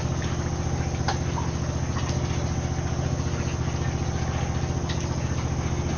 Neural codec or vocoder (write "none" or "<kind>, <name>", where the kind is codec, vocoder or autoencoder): none